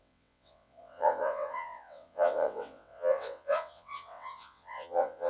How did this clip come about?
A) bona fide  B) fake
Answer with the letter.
B